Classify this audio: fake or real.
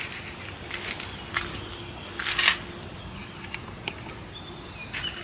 real